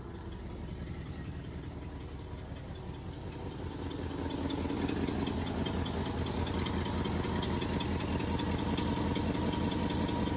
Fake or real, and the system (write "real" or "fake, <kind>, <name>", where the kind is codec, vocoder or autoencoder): real